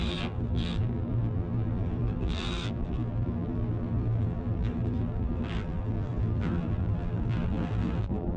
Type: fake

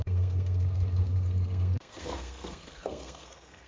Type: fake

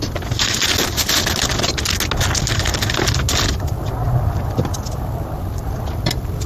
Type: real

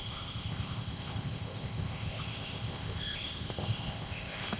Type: fake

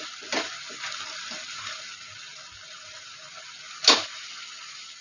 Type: real